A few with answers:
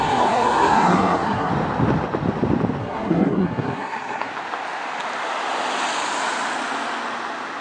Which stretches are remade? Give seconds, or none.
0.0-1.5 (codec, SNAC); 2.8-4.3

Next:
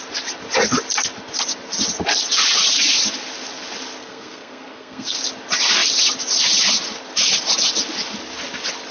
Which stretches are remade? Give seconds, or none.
4.0-5.2 (codec, SNAC)

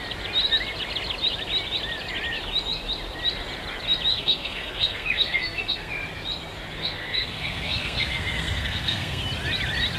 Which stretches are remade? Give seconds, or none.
4.1-5.9 (codec, SNAC); 6.8-9.2

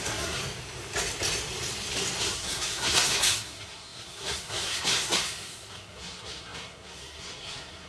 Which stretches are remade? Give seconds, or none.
0.0-0.4 (codec, SNAC); 2.2-7.9

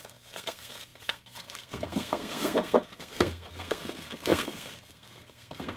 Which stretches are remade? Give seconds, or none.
0.0-5.8 (codec, SNAC)

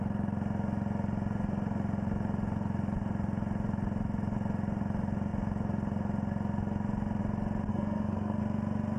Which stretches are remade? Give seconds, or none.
7.7-8.4 (codec, SNAC)